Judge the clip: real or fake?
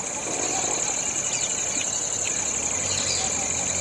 real